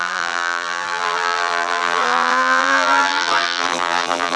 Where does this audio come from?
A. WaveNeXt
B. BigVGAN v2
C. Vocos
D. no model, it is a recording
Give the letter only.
B